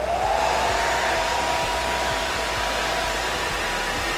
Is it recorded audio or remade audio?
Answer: recorded